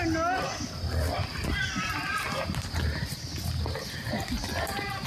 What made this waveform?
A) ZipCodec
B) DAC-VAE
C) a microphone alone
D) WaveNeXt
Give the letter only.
C